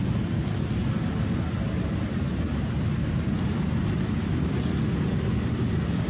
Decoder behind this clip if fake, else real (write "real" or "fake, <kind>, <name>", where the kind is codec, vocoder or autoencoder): real